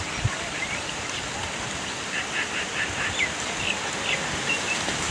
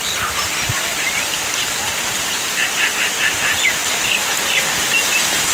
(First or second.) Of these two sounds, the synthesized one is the first